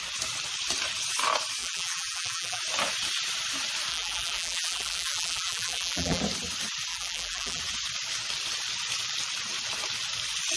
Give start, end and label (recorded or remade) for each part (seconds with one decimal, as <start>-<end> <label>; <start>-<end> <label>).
0.0-1.6 recorded; 1.6-2.6 remade; 2.6-3.9 recorded; 3.9-6.2 remade; 6.2-6.9 recorded; 6.9-7.6 remade; 7.6-10.6 recorded

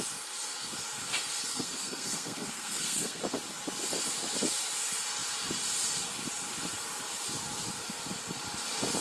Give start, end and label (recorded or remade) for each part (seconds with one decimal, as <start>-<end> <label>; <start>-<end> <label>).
0.0-1.5 recorded; 1.5-3.2 remade; 3.2-9.0 recorded